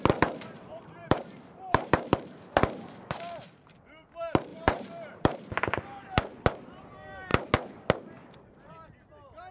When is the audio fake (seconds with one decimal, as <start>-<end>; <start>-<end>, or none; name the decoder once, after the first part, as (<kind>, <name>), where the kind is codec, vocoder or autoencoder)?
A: 1.0-3.8 (vocoder, BigVGAN v2); 4.5-5.6